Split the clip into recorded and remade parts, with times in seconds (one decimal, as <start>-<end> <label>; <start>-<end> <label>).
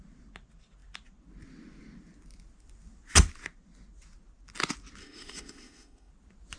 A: 0.0-5.0 recorded; 5.0-6.1 remade; 6.1-6.6 recorded